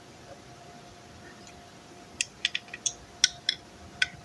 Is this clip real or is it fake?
real